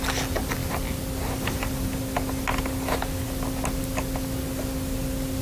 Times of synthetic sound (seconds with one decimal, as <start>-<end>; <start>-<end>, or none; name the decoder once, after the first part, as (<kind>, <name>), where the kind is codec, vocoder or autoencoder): none